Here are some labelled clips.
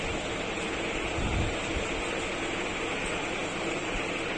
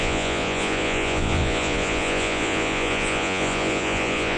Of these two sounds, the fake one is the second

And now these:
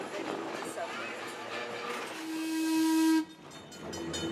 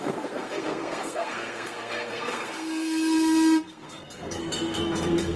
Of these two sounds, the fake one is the second